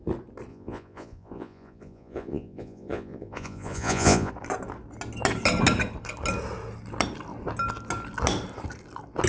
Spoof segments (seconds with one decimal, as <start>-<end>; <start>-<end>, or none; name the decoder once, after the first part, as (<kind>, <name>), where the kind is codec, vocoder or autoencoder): 0.5-4.3 (vocoder, Vocos)